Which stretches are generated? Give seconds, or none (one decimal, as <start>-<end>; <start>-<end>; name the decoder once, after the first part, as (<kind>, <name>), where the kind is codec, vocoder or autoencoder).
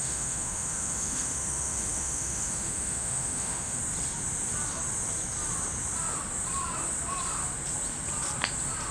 0.0-3.8 (autoencoder, DAC-VAE)